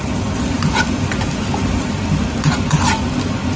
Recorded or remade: recorded